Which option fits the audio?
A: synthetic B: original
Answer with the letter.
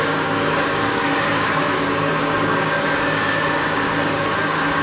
A